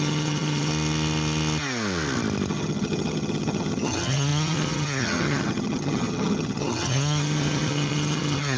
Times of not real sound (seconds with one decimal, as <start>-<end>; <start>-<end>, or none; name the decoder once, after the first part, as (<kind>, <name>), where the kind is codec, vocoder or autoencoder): 0.0-0.7 (vocoder, HiFi-GAN); 2.5-8.6